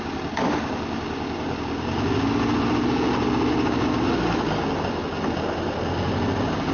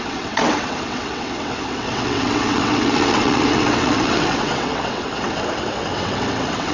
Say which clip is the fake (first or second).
second